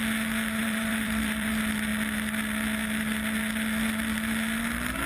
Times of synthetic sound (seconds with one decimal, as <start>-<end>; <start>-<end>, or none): 0.6-1.5